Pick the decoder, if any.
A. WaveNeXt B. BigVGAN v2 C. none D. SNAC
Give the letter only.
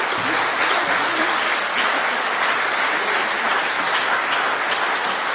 C